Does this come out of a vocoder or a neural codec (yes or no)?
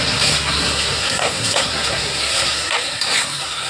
yes